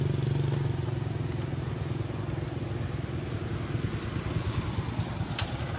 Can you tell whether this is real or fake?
real